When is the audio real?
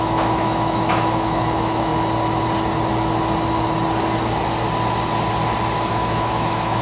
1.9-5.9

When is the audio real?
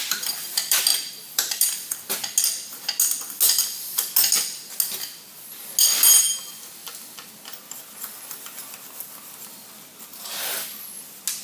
0.0-0.9; 1.7-10.1; 10.8-11.4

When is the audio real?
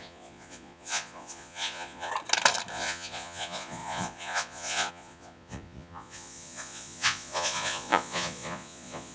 2.1-2.7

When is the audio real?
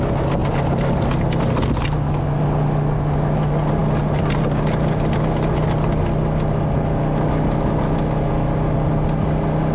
0.0-9.7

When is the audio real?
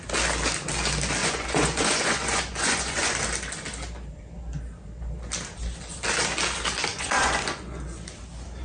0.0-1.2; 3.1-6.9; 7.8-8.6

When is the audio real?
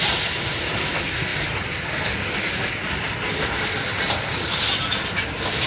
none